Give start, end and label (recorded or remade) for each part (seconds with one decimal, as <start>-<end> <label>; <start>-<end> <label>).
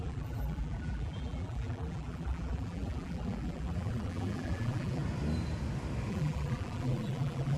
0.0-5.0 remade; 5.0-6.1 recorded; 6.1-7.6 remade